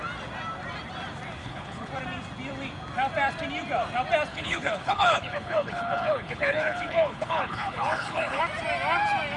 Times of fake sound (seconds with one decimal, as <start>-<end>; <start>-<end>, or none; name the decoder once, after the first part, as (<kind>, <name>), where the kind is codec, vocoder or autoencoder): 1.4-1.9 (codec, HILCodec); 4.3-8.4